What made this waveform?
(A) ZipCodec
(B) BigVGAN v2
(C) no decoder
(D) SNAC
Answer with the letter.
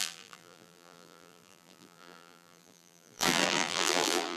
B